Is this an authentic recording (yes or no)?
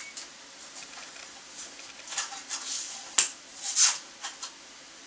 yes